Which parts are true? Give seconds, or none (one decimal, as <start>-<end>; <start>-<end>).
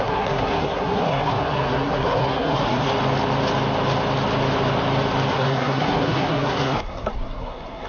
2.9-5.3